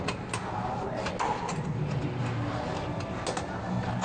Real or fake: real